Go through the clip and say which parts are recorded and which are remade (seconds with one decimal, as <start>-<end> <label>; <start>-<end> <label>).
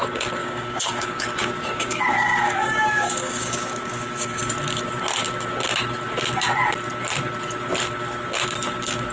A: 0.0-0.4 recorded; 0.4-4.4 remade; 4.4-9.1 recorded